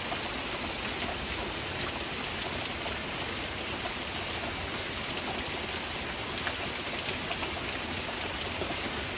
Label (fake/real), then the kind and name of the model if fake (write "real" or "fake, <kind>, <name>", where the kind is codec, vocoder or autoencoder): real